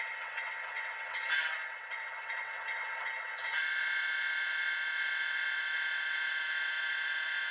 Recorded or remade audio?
remade